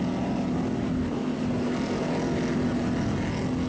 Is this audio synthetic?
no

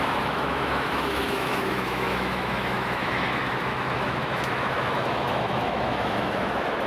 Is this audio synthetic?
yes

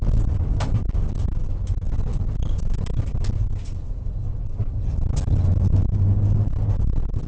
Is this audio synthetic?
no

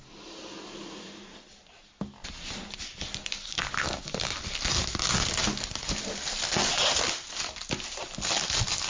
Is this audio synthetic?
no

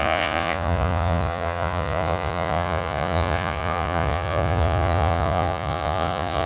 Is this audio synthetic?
yes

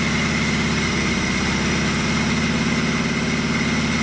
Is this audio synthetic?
no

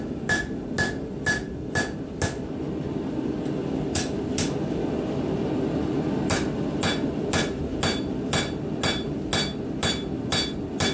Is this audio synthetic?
no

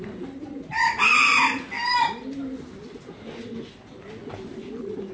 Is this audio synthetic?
no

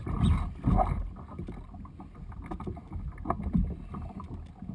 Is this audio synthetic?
no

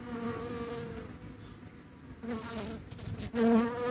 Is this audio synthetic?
no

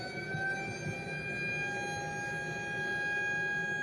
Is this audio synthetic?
no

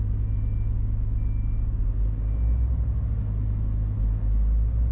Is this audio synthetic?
no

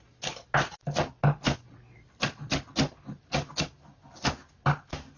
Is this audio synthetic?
no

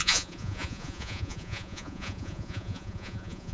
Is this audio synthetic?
yes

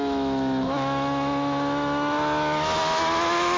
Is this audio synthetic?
yes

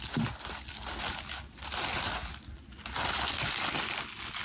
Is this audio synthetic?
no